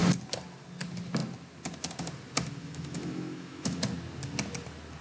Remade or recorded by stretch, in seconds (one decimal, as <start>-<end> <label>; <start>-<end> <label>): 0.0-2.6 recorded; 2.6-3.8 remade; 3.8-5.0 recorded